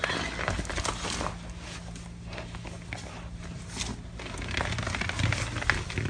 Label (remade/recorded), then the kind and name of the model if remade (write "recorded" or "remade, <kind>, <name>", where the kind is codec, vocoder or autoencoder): recorded